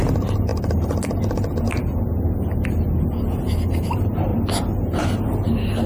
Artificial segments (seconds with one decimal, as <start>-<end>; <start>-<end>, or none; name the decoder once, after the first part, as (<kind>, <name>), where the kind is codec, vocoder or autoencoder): 4.3-5.9 (vocoder, BigVGAN v2)